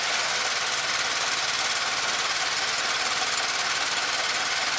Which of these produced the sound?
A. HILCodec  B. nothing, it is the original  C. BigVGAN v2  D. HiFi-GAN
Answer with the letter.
B